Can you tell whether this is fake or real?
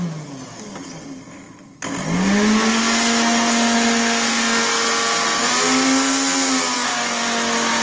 real